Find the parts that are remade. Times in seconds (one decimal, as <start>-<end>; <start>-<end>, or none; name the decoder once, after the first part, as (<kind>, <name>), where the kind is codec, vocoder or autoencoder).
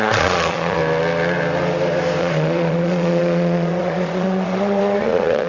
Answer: 0.0-0.8 (vocoder, Vocos); 2.2-5.5